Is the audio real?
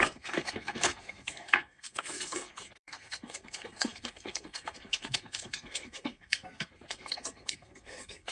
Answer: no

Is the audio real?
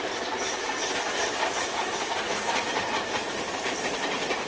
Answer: yes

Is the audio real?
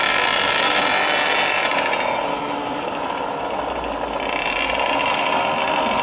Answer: yes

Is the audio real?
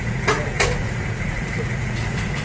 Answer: no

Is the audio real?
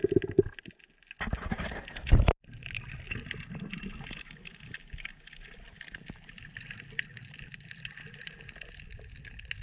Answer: yes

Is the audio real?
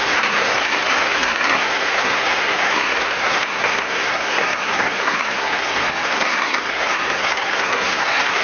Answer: no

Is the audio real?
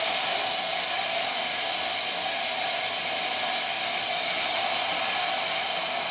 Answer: no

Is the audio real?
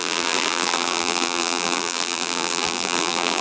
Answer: no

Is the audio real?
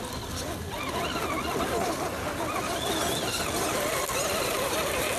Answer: yes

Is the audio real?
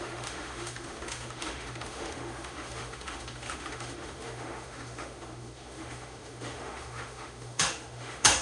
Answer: no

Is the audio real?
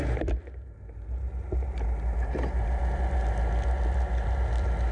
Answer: yes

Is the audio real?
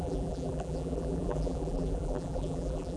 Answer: no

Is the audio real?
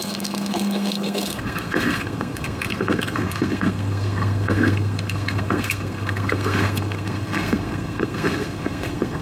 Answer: no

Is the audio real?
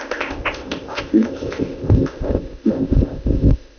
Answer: no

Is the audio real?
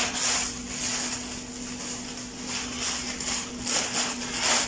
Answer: yes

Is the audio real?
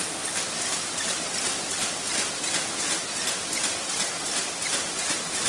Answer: yes